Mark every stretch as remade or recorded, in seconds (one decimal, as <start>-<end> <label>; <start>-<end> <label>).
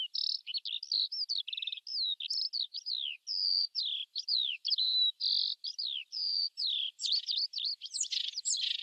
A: 0.0-0.4 remade; 0.4-3.8 recorded; 3.8-8.8 remade